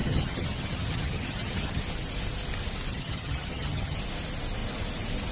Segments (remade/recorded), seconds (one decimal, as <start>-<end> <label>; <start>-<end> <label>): 0.0-1.8 remade; 1.8-2.9 recorded; 2.9-4.0 remade; 4.0-5.3 recorded